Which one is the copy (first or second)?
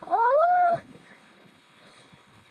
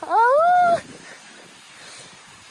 first